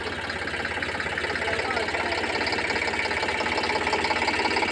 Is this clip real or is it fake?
real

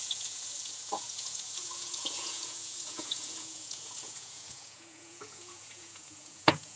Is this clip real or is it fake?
fake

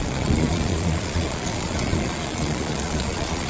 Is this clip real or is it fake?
fake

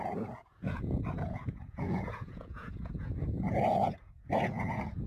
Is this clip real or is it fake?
fake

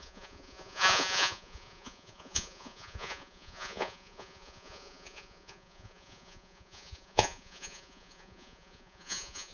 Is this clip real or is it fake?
fake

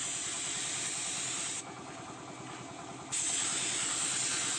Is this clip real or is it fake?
real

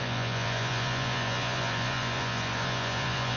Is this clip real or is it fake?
fake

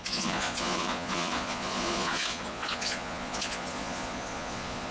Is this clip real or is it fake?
fake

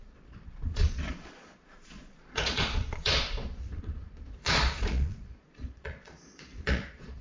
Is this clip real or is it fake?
fake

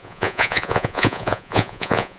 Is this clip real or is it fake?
fake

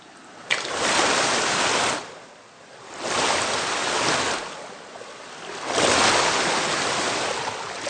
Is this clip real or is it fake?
real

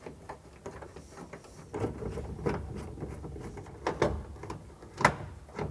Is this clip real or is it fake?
real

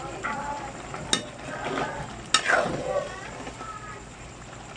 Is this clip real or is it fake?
real